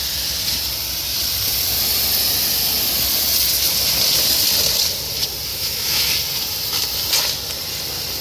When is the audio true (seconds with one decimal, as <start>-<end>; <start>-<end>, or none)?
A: 0.0-5.5; 6.1-8.2